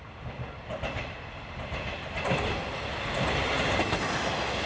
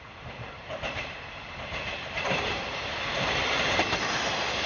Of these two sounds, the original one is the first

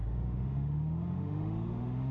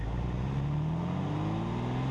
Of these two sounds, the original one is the second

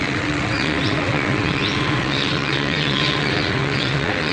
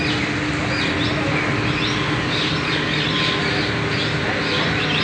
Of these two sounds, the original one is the second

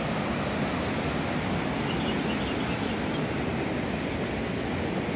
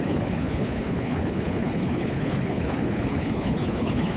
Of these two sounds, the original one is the first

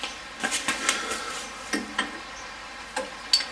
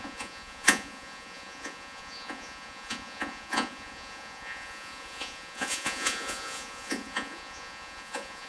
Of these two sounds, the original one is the first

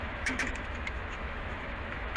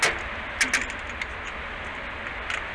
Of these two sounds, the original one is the second